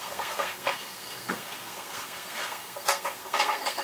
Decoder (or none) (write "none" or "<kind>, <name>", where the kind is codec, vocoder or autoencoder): codec, SNAC